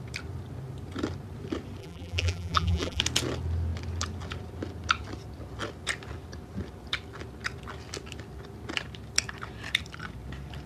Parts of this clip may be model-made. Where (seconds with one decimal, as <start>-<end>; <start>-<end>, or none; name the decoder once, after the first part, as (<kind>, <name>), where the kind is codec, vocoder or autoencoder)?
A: 1.8-3.0 (vocoder, BigVGAN v2)